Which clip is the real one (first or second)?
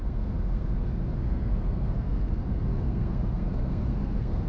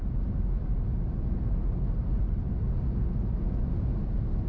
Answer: second